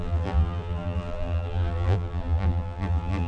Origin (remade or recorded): remade